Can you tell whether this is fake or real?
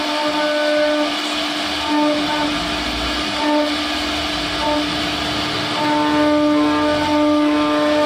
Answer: real